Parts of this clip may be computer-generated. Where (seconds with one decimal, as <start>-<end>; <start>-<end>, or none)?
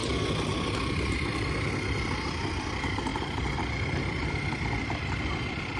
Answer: 0.0-1.7; 3.1-5.0